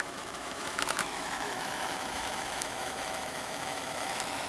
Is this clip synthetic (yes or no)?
yes